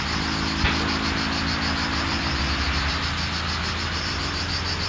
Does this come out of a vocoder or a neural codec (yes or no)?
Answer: no